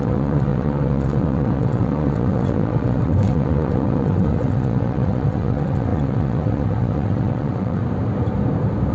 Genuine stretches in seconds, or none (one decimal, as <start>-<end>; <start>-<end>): 7.8-8.9